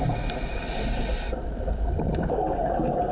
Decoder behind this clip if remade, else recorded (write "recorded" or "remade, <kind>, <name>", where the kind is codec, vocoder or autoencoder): recorded